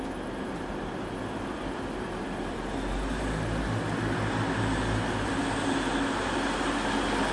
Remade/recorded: recorded